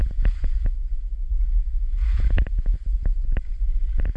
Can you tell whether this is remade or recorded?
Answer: recorded